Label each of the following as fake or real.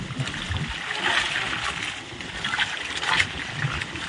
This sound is real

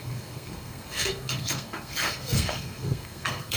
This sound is fake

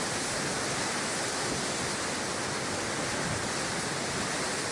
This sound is real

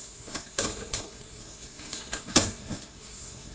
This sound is fake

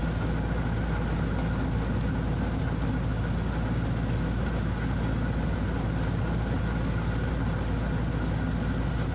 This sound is real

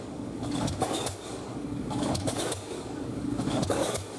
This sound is fake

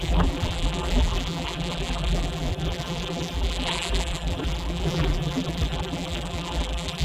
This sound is fake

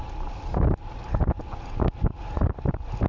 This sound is real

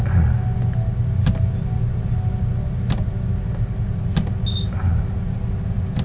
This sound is real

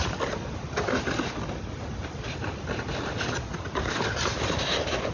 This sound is real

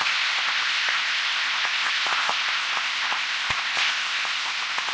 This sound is fake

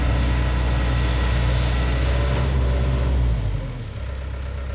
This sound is real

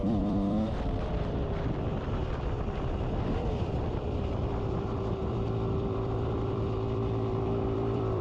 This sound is fake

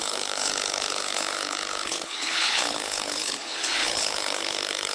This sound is fake